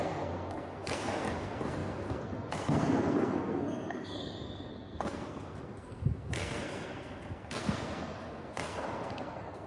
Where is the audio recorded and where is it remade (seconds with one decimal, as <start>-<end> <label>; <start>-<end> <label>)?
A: 0.0-9.7 remade